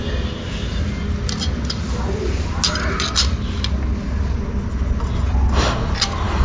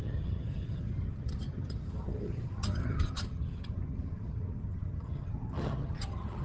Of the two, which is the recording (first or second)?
first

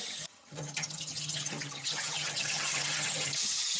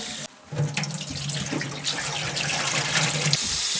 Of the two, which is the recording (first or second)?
second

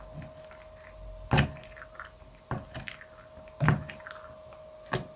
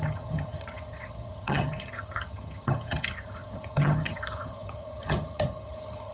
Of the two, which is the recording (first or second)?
first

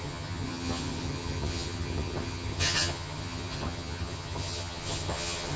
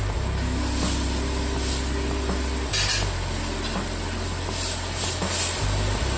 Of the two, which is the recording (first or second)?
second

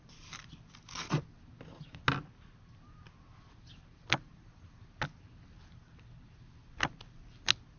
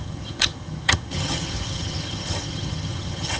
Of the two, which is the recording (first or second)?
first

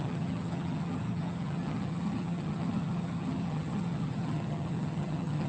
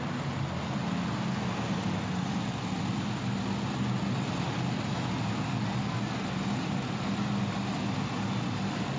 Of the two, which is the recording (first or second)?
second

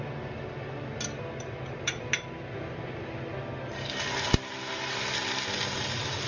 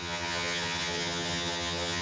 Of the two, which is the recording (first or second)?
first